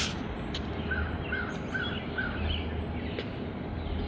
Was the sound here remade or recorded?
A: recorded